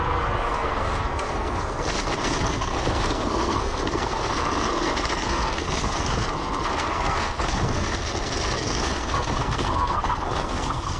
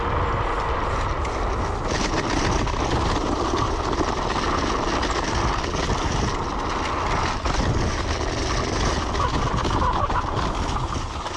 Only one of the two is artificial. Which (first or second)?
first